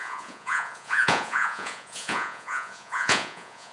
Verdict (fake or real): fake